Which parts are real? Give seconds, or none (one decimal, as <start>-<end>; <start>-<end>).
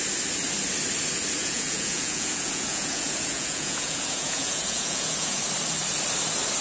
0.0-1.4; 5.4-6.6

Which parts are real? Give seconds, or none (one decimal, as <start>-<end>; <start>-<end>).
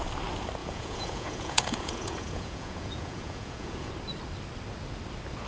0.0-0.6; 3.9-5.5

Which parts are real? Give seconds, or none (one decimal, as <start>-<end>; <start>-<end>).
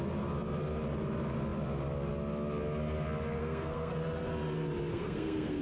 0.0-3.4; 3.9-4.9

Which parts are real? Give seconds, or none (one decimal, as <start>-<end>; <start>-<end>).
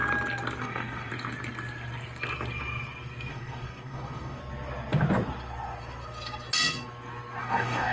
0.0-0.6; 1.1-3.3; 4.4-7.4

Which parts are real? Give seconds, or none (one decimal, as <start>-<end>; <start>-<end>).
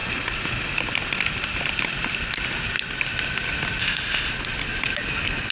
0.0-3.8; 4.3-5.5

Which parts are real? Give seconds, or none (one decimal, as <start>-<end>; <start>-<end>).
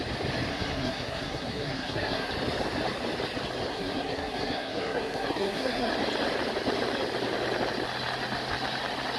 0.0-0.5; 2.3-3.7; 5.9-9.2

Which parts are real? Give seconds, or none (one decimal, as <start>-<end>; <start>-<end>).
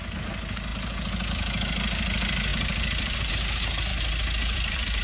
0.0-2.5; 3.3-3.9